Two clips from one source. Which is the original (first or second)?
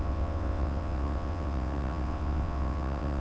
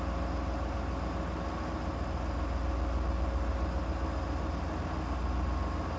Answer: second